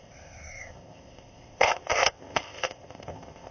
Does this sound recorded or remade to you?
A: remade